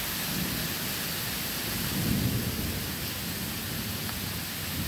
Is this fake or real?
real